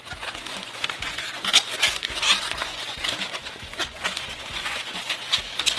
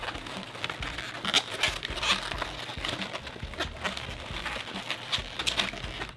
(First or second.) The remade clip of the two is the first